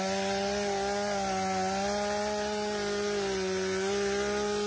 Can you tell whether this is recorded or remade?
recorded